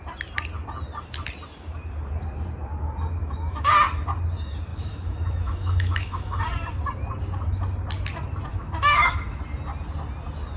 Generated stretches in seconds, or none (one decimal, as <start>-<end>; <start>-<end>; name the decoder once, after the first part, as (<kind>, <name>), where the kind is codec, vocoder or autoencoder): 3.2-3.7 (autoencoder, DAC-VAE); 4.7-6.4; 8.5-9.4